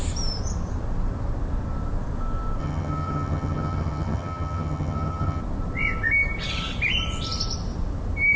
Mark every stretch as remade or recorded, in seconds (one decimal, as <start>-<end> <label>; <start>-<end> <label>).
0.0-2.6 recorded; 2.6-5.4 remade; 5.4-8.4 recorded